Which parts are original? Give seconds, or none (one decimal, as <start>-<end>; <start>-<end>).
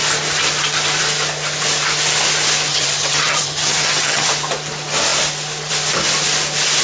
0.0-2.7; 4.3-6.8